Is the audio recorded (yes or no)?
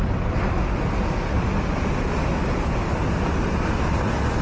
yes